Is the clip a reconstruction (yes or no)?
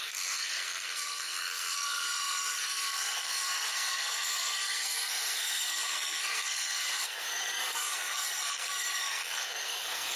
yes